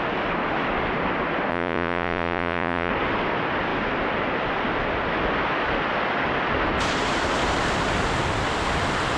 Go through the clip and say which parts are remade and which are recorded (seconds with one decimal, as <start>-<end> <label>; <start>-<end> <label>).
0.0-1.5 recorded; 1.5-2.9 remade; 2.9-9.2 recorded